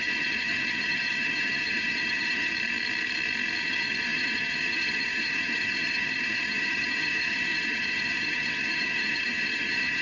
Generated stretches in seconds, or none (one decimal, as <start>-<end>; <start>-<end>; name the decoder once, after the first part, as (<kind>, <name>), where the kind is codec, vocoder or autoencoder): 0.0-2.5 (vocoder, HiFi-GAN); 3.6-10.0